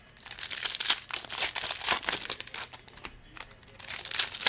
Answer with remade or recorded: recorded